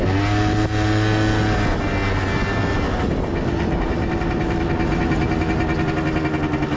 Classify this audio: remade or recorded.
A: recorded